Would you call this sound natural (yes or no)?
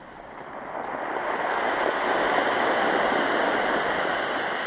yes